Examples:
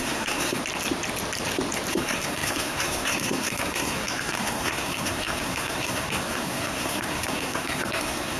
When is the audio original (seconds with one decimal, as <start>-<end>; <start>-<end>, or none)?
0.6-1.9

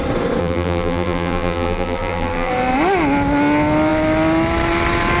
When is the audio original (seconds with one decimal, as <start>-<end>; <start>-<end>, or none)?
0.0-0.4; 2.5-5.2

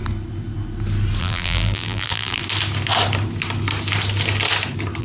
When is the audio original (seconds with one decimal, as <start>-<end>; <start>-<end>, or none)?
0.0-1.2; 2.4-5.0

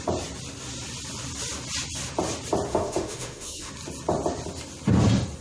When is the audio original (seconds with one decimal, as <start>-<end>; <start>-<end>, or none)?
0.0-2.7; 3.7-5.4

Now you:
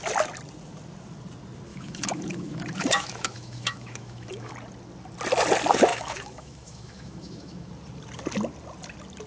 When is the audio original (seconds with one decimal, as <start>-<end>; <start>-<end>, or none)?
0.0-1.7; 4.5-5.9; 7.7-9.3

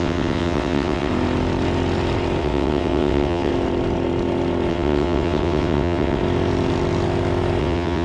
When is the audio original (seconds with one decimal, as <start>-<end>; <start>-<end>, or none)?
1.1-2.4; 3.5-4.7; 6.2-7.6